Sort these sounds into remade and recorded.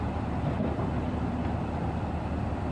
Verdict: recorded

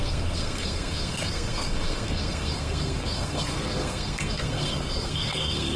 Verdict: remade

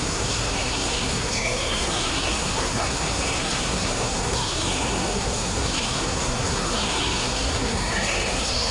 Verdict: remade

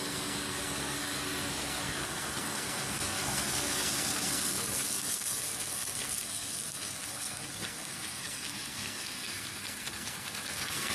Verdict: remade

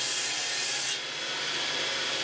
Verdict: recorded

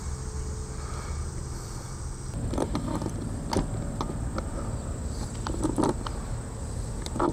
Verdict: recorded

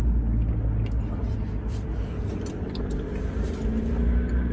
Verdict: recorded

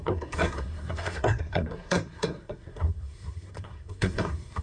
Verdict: remade